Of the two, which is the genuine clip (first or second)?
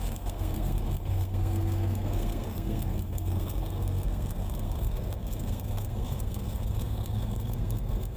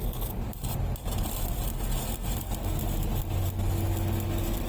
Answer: second